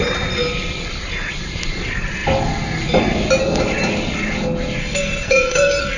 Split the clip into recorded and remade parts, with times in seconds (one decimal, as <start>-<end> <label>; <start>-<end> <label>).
0.0-4.8 recorded; 4.8-6.0 remade